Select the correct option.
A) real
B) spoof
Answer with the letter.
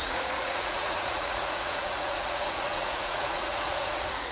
B